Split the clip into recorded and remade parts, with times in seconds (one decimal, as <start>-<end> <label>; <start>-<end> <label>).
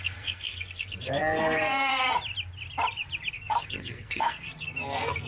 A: 0.0-1.9 remade; 1.9-3.3 recorded; 3.3-5.3 remade